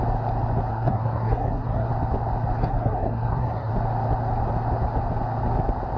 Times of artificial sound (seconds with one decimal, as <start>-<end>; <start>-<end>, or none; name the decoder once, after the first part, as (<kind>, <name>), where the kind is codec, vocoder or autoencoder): 0.7-1.9 (codec, SNAC); 2.6-3.7

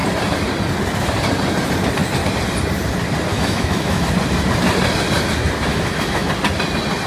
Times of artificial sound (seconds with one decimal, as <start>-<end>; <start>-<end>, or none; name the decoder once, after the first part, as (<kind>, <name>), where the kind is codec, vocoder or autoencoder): 3.3-4.1 (autoencoder, DAC-VAE); 5.7-6.3

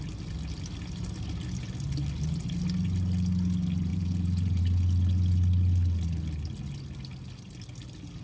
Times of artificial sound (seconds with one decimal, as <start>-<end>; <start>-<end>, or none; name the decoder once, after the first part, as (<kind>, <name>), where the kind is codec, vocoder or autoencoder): 3.9-4.6 (vocoder, Vocos)

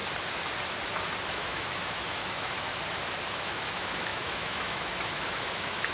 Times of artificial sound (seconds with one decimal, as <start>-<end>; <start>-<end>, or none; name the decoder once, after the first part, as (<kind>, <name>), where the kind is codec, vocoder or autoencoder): 1.3-2.7 (autoencoder, DAC-VAE); 3.3-5.9

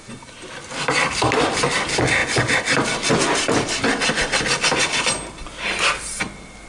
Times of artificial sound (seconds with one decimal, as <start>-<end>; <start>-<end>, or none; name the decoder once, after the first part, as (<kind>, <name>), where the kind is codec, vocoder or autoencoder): none

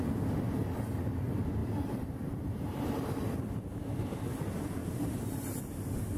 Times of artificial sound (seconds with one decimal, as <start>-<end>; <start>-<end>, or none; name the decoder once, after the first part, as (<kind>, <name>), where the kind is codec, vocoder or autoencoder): 1.6-3.5 (vocoder, BigVGAN v2); 4.8-5.6

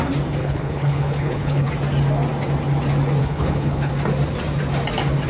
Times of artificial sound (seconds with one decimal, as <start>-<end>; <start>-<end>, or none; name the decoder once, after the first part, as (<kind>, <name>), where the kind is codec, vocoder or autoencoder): 0.4-1.7 (codec, HILCodec); 3.2-3.9

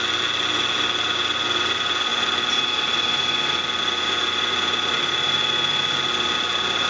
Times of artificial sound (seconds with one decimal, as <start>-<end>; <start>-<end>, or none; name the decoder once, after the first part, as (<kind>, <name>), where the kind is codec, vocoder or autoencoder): none